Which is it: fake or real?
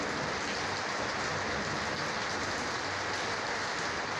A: real